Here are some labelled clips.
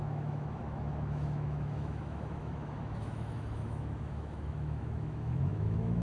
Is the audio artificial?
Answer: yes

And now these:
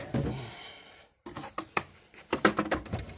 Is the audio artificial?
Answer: no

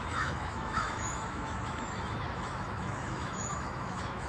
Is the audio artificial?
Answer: yes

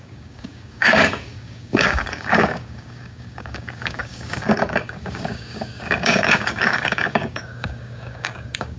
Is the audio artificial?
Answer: yes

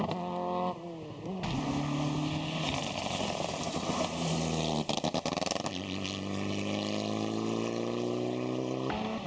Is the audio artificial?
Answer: no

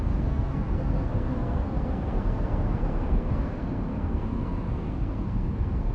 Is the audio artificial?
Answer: yes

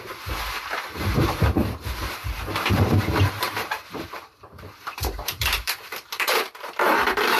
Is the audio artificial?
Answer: yes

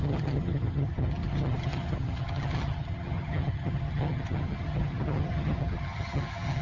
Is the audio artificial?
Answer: yes